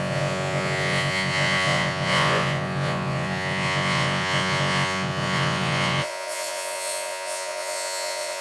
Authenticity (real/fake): fake